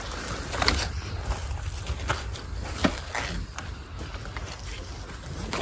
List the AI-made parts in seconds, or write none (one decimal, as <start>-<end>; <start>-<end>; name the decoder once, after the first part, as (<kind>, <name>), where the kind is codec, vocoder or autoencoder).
none